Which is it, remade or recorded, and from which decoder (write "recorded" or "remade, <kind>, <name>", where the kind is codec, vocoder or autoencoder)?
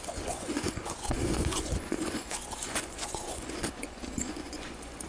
remade, vocoder, Vocos